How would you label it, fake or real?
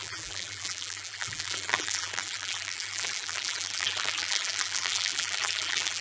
fake